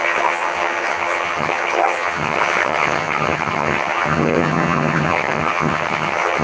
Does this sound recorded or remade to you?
remade